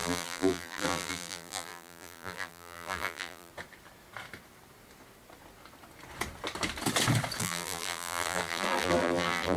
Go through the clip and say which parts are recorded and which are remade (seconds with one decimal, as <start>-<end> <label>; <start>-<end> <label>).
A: 0.0-3.5 remade; 3.5-7.4 recorded; 7.4-9.6 remade